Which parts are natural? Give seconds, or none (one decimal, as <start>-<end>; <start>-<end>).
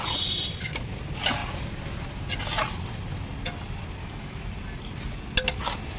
0.0-4.0; 4.5-6.0